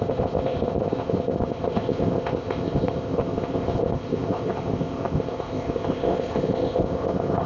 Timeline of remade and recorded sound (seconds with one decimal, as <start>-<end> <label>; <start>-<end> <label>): 0.0-7.5 remade

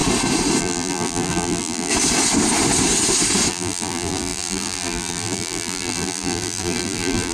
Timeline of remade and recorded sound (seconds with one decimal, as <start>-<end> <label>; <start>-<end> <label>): 0.0-0.6 recorded; 0.6-1.9 remade; 1.9-3.5 recorded; 3.5-7.3 remade